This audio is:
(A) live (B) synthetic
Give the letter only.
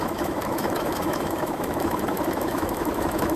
B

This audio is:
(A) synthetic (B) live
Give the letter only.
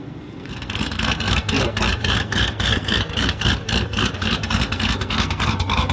A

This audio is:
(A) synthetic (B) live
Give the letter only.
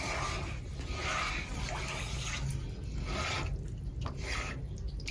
B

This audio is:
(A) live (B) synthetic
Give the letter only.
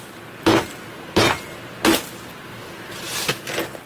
A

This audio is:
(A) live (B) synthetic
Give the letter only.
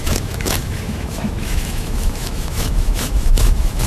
B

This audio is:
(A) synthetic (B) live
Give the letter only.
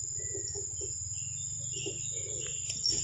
B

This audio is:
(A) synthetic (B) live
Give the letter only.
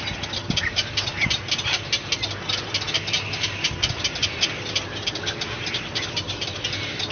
B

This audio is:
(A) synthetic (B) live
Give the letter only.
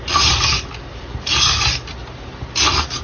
B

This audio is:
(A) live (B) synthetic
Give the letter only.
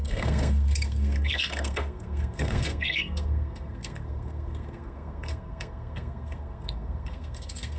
B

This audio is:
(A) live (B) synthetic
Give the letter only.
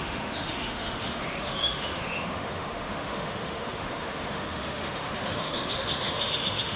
B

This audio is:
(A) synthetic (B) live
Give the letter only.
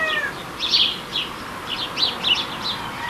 A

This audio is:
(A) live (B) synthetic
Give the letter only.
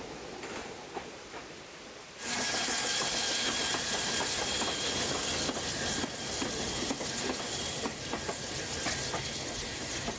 A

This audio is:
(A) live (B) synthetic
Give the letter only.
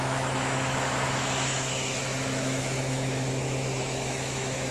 B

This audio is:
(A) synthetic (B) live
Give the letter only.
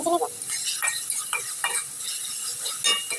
B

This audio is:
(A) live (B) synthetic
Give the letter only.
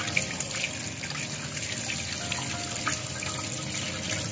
A